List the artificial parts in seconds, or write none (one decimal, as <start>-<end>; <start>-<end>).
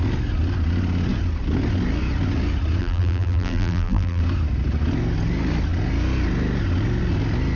2.8-4.2